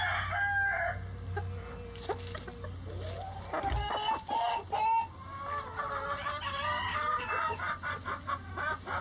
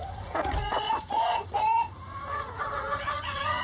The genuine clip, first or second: first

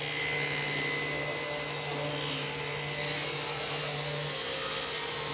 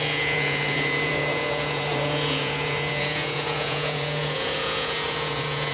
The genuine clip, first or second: first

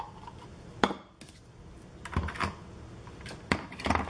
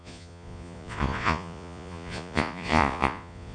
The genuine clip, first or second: first